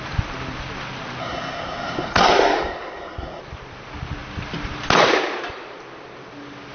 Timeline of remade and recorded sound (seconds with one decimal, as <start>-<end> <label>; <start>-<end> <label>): 0.0-1.2 recorded; 1.2-3.4 remade; 3.4-6.7 recorded